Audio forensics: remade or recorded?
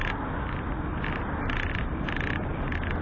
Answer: recorded